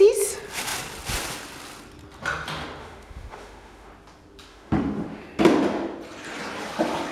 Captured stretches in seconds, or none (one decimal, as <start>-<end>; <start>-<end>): 0.0-2.8; 3.9-4.5; 5.2-7.1